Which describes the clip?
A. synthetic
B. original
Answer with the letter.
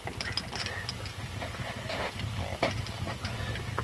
B